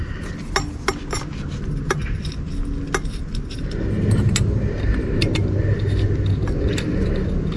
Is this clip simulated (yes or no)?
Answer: no